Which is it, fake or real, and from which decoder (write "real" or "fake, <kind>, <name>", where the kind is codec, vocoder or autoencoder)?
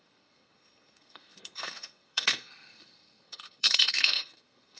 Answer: fake, codec, SNAC